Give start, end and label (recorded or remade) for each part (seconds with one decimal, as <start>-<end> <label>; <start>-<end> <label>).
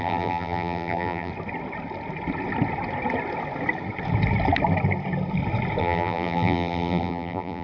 0.0-1.3 remade; 1.3-5.8 recorded; 5.8-7.6 remade